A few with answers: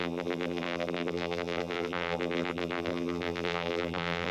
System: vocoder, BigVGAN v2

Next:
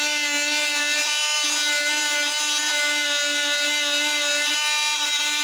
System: none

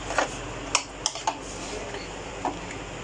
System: none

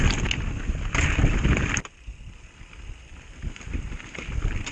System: none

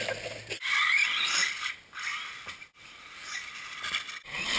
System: none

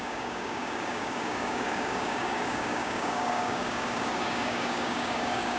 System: codec, DAC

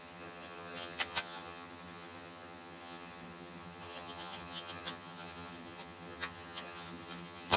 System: vocoder, HiFi-GAN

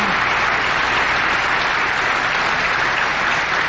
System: none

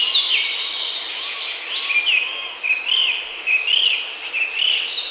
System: none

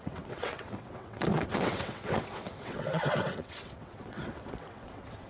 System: vocoder, WaveNeXt